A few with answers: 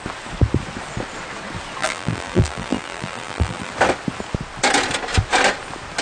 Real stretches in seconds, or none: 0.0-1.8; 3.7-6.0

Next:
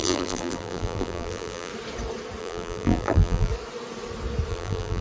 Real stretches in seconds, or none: 1.7-2.4; 3.5-4.5

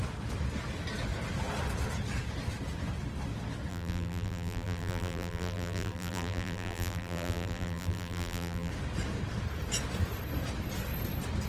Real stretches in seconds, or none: 0.0-3.7; 8.7-11.5

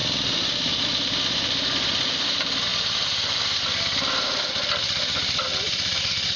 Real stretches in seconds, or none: 0.0-6.4

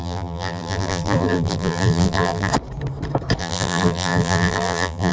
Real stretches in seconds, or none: 2.5-3.4

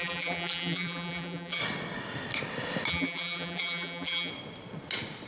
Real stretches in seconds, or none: 1.6-2.9; 4.3-5.3

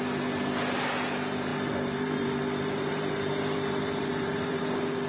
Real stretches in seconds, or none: 0.0-1.5; 4.6-5.1